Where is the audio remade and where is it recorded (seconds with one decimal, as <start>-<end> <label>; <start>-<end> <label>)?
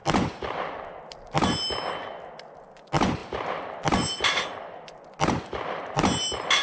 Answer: 0.0-6.6 recorded